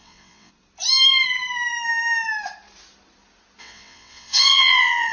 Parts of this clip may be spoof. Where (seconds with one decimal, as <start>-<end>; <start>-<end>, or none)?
0.0-0.5; 3.6-5.1